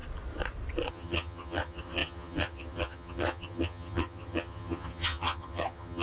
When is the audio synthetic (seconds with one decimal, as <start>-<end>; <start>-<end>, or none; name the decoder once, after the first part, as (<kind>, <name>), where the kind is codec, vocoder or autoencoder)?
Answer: 0.9-6.0 (vocoder, HiFi-GAN)